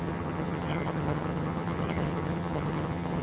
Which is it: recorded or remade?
remade